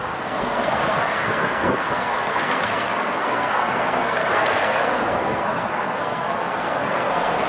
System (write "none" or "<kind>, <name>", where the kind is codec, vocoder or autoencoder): codec, SNAC